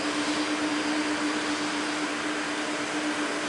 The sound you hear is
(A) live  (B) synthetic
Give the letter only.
A